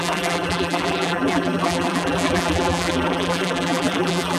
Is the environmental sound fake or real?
fake